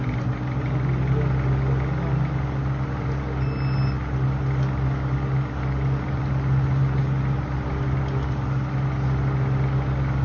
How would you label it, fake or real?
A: real